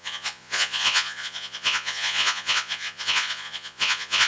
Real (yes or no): no